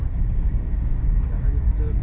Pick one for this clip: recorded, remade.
remade